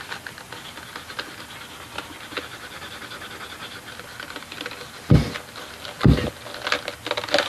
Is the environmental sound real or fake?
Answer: real